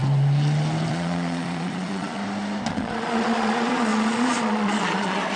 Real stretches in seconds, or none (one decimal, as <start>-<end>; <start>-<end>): 0.0-0.9; 2.2-2.7